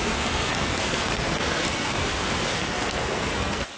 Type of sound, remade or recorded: remade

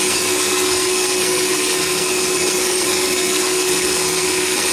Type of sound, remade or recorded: remade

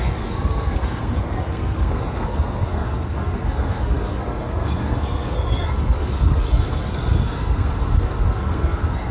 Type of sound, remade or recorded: remade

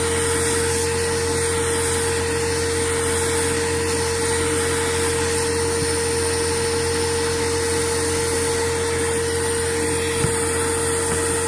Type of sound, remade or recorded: recorded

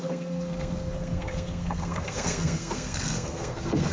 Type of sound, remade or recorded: remade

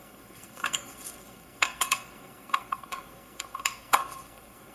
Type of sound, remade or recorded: remade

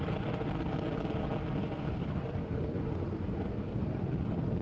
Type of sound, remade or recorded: recorded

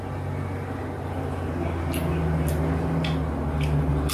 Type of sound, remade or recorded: recorded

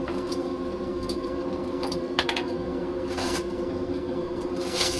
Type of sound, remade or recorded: remade